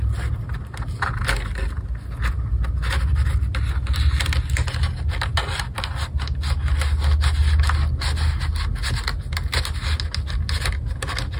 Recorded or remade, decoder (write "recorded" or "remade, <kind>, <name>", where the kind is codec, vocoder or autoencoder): recorded